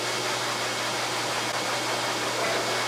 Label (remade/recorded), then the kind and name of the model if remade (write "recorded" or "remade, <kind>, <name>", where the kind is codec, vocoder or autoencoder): recorded